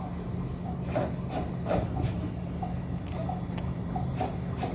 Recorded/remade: recorded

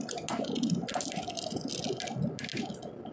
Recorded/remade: recorded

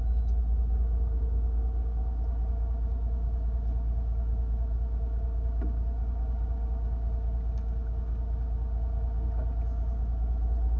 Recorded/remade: recorded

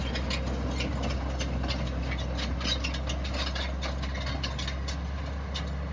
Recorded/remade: recorded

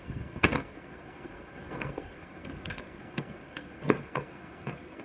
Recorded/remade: remade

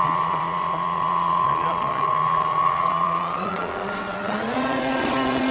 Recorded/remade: remade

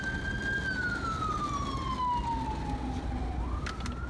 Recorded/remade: recorded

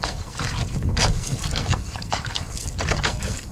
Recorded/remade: remade